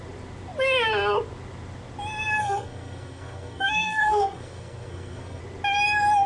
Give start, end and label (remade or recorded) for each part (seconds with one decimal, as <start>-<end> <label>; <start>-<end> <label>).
0.0-2.4 recorded; 2.4-5.4 remade; 5.4-6.3 recorded